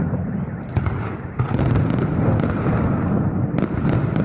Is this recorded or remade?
recorded